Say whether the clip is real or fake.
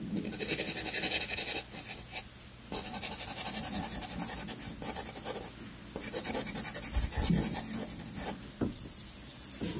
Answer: real